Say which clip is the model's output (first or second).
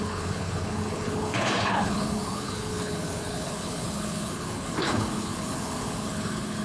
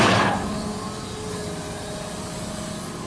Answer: first